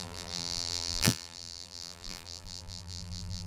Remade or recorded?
remade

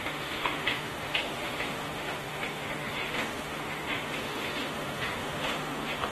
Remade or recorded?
remade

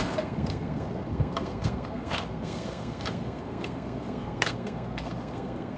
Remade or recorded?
remade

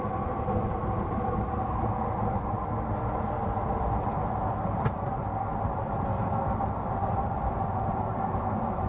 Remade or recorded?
remade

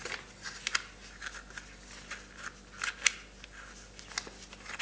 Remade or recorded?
recorded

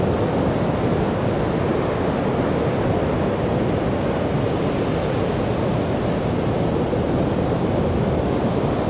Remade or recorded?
recorded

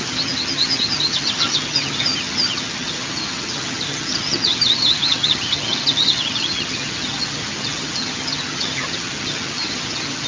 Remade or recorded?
remade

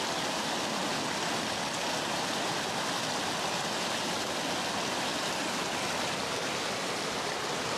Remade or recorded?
recorded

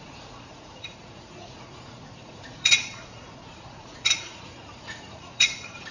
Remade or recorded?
remade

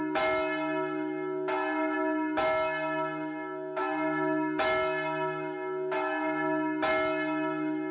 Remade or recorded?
recorded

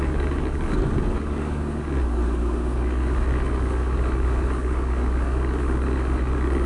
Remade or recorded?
remade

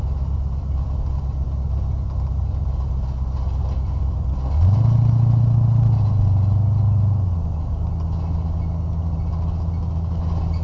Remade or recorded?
recorded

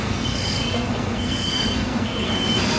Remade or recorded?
remade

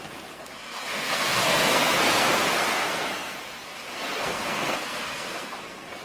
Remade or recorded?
remade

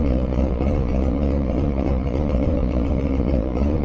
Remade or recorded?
remade